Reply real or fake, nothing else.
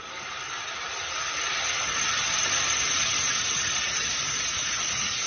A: fake